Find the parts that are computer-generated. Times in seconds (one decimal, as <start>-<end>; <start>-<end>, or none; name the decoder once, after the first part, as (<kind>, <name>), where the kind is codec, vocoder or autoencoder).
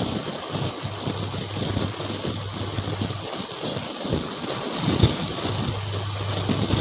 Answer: none